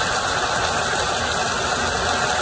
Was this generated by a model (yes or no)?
no